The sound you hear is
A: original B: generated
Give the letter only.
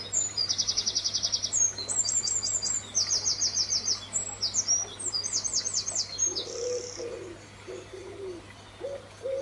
A